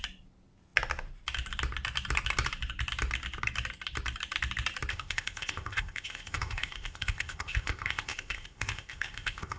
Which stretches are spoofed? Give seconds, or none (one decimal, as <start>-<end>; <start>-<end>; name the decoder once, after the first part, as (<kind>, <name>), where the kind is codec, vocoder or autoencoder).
4.9-9.6 (codec, ZipCodec)